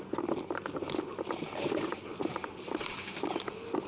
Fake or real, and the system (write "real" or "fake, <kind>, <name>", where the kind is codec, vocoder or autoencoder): real